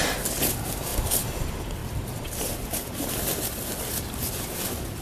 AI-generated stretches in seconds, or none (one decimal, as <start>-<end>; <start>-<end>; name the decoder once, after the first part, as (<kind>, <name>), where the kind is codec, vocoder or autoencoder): none